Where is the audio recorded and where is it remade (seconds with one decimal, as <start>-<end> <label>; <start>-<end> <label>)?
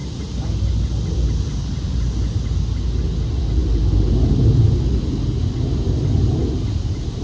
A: 0.0-7.2 recorded